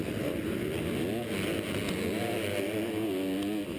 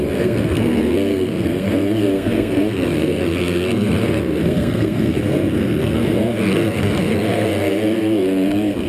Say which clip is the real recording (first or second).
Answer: first